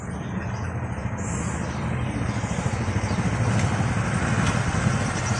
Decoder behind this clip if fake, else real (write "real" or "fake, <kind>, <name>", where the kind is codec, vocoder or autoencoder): real